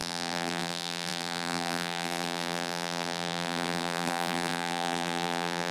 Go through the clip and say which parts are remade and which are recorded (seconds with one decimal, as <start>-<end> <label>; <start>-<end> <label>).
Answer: 0.0-5.7 remade